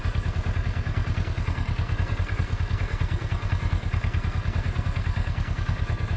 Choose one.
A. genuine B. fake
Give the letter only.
B